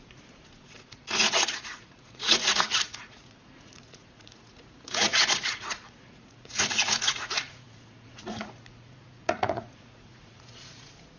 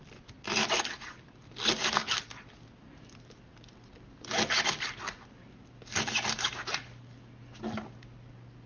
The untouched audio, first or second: second